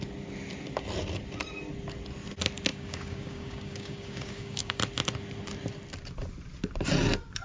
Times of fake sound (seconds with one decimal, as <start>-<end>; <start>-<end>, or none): 2.7-4.8